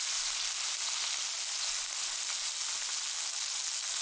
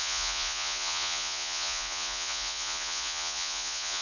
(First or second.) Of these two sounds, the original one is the first